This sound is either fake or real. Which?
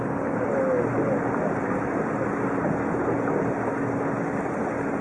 real